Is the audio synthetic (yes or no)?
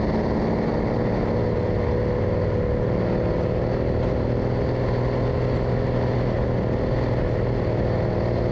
no